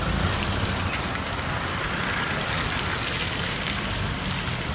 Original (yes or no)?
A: yes